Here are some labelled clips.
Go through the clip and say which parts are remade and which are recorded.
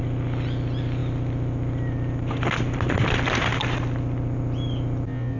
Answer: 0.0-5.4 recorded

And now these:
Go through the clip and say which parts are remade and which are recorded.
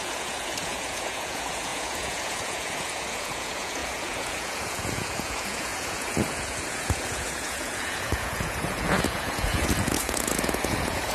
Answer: 0.0-11.1 remade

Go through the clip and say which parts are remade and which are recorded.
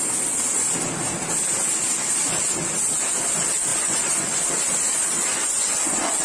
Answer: 0.0-3.7 recorded; 3.7-4.5 remade; 4.5-5.3 recorded; 5.3-6.2 remade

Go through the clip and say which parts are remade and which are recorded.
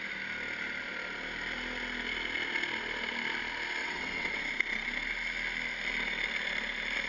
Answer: 0.0-3.8 recorded; 3.8-4.4 remade; 4.4-7.1 recorded